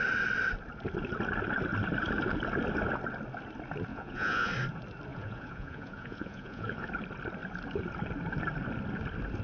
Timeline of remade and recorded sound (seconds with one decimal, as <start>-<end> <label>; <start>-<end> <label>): 0.0-3.9 recorded; 3.9-4.5 remade; 4.5-5.1 recorded; 5.1-6.9 remade; 6.9-9.4 recorded

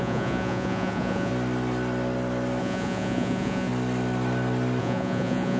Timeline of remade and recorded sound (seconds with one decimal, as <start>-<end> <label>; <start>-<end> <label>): 0.0-1.3 remade; 1.3-2.6 recorded; 2.6-3.7 remade; 3.7-4.8 recorded; 4.8-5.6 remade

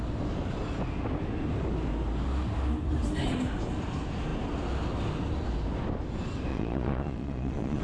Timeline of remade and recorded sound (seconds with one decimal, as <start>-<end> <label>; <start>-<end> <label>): 0.0-6.5 recorded; 6.5-7.8 remade